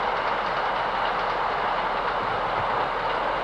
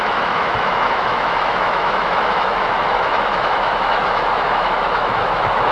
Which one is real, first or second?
first